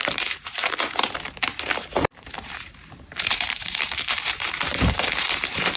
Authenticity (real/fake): fake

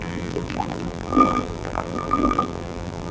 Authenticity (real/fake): fake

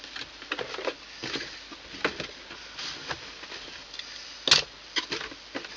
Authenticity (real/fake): real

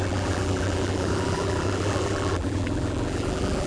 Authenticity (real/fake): fake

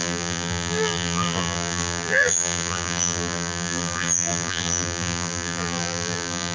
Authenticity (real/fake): fake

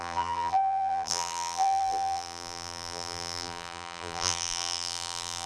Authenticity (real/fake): fake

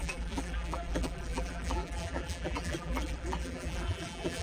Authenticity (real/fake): fake